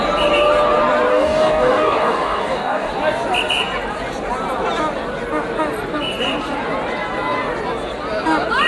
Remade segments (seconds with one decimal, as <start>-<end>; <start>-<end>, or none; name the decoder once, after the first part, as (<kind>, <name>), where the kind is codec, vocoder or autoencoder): 1.1-2.9 (codec, DAC)